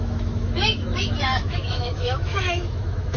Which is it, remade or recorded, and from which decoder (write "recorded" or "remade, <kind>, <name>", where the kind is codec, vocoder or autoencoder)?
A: remade, autoencoder, DAC-VAE